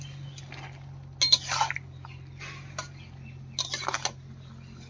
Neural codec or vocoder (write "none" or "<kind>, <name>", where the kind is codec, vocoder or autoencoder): none